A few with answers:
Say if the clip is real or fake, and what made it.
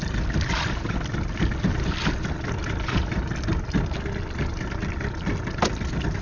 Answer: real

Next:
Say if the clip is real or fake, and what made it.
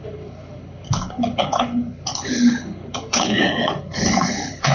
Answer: fake, codec, HILCodec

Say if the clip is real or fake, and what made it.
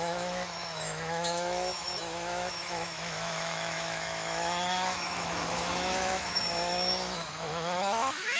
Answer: fake, autoencoder, DAC-VAE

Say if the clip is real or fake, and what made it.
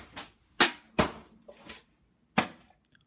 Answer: real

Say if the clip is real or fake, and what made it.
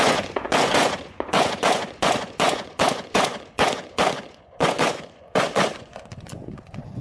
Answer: fake, vocoder, Vocos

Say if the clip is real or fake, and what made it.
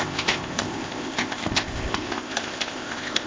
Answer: fake, codec, ZipCodec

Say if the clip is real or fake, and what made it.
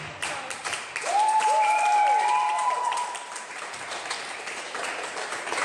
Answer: fake, vocoder, BigVGAN v2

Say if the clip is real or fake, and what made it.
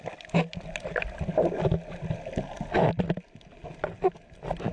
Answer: real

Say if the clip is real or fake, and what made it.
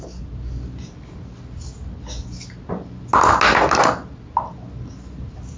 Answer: real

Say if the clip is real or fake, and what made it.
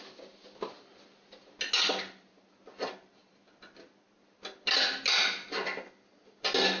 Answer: real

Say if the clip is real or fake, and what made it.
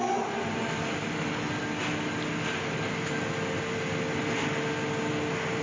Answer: real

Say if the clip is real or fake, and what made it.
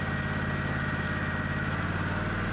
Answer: real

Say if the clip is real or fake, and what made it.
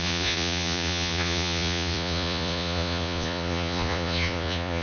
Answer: fake, vocoder, Vocos